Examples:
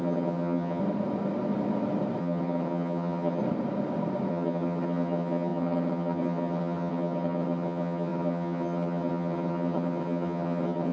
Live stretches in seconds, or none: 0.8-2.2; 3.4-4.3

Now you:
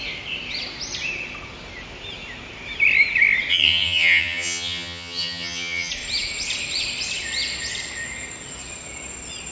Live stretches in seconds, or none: 0.0-3.5; 5.9-9.5

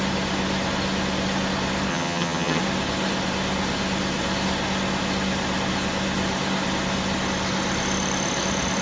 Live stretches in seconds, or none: 0.0-1.9; 2.6-8.8

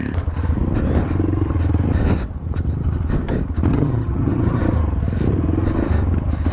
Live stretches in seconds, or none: 0.0-3.7; 4.6-6.5

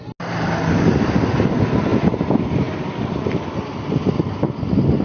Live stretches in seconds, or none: 0.0-5.0

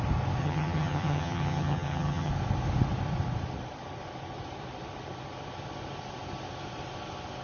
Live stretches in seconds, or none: 0.0-0.4; 2.3-7.4